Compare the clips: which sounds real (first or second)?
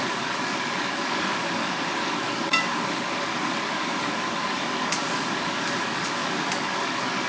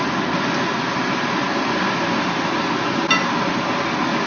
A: second